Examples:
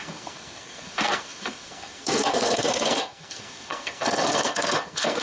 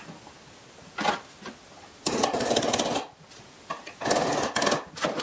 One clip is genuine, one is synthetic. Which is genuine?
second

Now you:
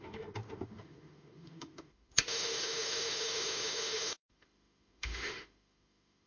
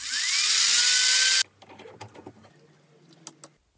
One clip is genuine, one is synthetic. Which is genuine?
second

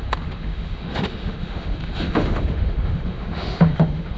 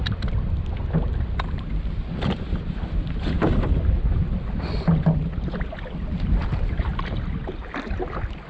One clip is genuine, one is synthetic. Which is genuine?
second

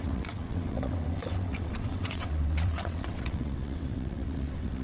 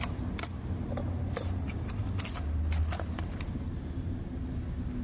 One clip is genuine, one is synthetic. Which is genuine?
second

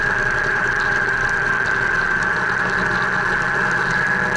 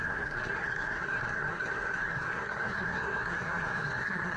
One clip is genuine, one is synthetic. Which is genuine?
first